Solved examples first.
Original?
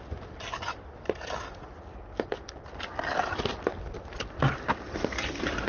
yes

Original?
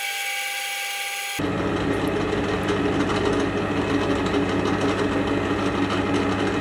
yes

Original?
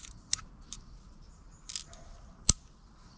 yes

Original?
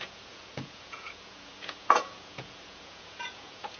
no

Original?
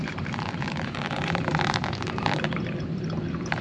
no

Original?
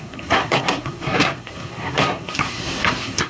no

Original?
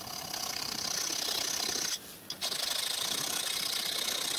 yes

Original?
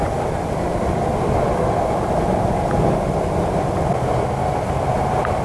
yes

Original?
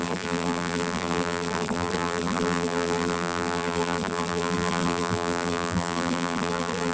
no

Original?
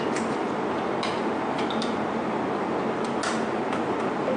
yes